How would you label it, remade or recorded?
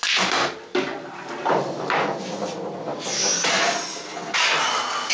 recorded